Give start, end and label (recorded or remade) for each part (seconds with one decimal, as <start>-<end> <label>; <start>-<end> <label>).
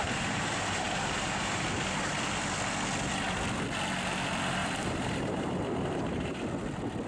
0.0-2.1 remade; 2.1-4.6 recorded; 4.6-6.4 remade; 6.4-7.1 recorded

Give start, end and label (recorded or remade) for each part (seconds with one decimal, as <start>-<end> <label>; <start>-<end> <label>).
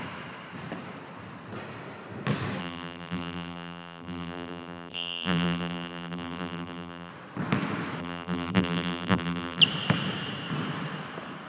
0.0-2.6 recorded; 2.6-7.1 remade; 7.1-8.0 recorded; 8.0-9.6 remade; 9.6-11.5 recorded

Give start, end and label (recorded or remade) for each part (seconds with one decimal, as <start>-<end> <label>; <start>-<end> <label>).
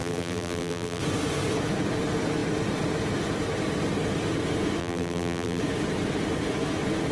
0.0-1.0 remade; 1.0-4.8 recorded; 4.8-5.6 remade; 5.6-7.1 recorded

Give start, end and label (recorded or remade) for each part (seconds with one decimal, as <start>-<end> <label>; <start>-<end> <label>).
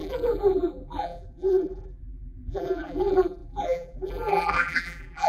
0.0-5.3 remade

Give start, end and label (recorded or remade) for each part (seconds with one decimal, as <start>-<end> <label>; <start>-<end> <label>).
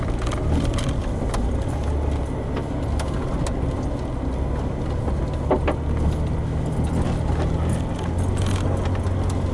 0.0-9.5 recorded